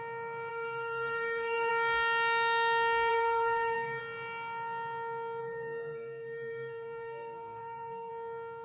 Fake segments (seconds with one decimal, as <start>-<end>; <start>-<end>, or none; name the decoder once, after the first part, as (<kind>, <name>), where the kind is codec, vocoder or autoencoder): 0.5-1.7 (codec, SNAC); 3.1-4.0; 5.4-8.1